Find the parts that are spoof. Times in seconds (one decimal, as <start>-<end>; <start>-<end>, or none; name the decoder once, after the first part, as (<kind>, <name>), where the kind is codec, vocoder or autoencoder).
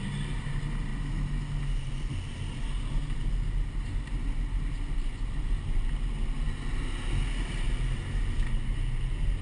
none